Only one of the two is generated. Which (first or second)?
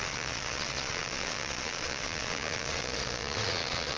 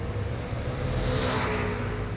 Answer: first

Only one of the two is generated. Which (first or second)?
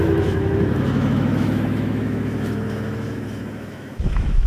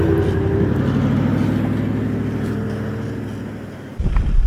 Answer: first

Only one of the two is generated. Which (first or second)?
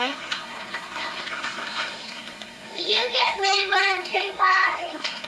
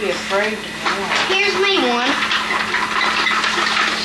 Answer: first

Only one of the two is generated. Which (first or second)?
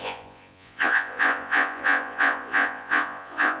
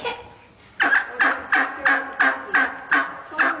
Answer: first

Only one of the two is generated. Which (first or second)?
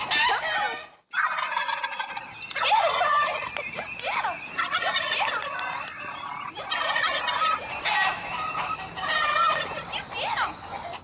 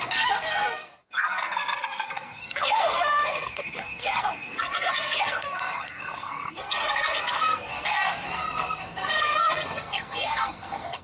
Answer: second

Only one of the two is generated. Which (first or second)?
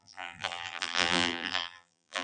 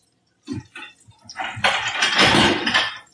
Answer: first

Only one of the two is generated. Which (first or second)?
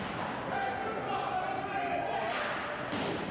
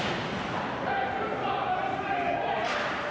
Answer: second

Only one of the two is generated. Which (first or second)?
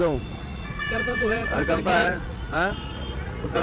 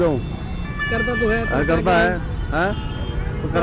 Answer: first